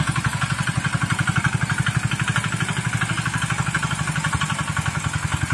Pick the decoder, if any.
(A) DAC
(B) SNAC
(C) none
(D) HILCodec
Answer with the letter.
C